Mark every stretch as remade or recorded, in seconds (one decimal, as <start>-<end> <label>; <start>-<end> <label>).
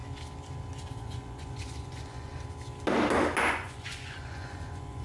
0.0-1.0 recorded; 1.0-2.3 remade; 2.3-3.5 recorded; 3.5-5.0 remade